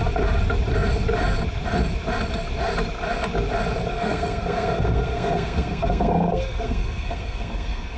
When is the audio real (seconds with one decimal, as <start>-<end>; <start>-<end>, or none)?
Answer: 0.0-3.9